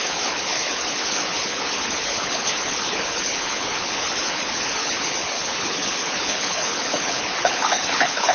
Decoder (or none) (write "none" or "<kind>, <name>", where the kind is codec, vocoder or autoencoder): codec, HILCodec